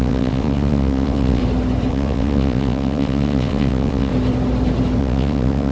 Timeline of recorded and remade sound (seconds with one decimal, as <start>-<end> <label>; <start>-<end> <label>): 0.0-1.4 remade; 1.4-1.9 recorded; 1.9-4.1 remade; 4.1-5.0 recorded; 5.0-5.7 remade